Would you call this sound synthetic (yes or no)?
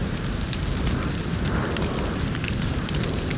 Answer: yes